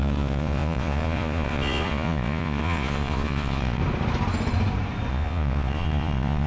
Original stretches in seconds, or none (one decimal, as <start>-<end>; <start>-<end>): 3.8-5.1